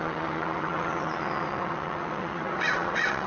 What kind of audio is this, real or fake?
fake